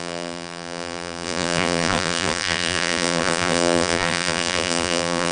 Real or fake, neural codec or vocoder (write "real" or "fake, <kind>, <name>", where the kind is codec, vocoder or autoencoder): fake, vocoder, BigVGAN v2